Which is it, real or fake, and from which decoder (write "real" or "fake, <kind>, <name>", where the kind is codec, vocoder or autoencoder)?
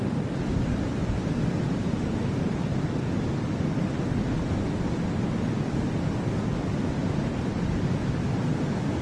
real